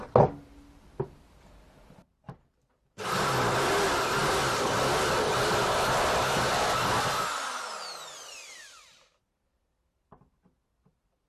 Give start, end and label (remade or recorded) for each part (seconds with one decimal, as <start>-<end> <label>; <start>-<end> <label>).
0.0-11.3 recorded

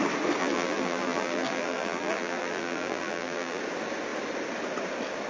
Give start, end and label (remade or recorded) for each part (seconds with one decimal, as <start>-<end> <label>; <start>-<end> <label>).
0.0-0.4 recorded; 0.4-3.6 remade; 3.6-5.3 recorded

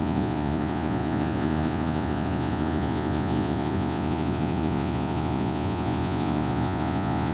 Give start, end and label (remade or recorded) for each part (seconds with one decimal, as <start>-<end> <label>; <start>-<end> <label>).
0.0-7.3 remade

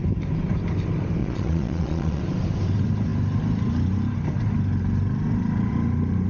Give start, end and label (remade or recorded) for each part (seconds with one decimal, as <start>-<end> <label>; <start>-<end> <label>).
0.0-1.2 recorded; 1.2-2.2 remade; 2.2-6.3 recorded

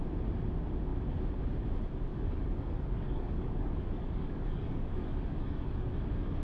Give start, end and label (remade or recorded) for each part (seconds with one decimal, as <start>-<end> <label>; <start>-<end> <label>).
0.0-2.1 recorded; 2.1-5.9 remade; 5.9-6.4 recorded

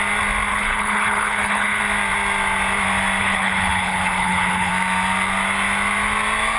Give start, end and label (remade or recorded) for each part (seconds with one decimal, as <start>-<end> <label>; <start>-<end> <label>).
0.0-0.5 recorded; 0.5-1.8 remade; 1.8-3.2 recorded; 3.2-4.7 remade; 4.7-6.6 recorded

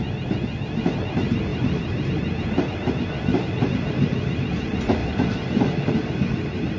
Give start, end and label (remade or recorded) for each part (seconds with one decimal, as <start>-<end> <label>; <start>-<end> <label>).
0.0-1.5 recorded; 1.5-2.1 remade; 2.1-5.0 recorded; 5.0-5.9 remade; 5.9-6.8 recorded

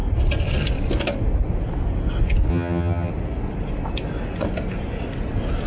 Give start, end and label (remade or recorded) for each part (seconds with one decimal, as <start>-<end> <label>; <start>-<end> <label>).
0.0-2.5 recorded; 2.5-3.1 remade; 3.1-5.7 recorded